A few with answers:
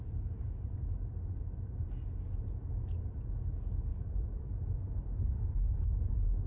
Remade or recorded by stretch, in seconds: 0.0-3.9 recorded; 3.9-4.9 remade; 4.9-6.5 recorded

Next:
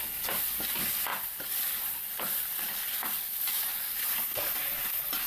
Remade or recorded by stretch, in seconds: 0.0-1.1 recorded; 1.1-4.3 remade; 4.3-5.3 recorded

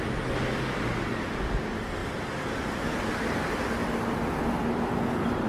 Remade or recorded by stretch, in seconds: 0.0-2.0 recorded; 2.0-2.8 remade; 2.8-5.5 recorded

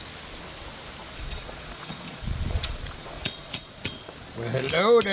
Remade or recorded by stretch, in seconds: 0.0-1.0 recorded; 1.0-4.1 remade; 4.1-5.1 recorded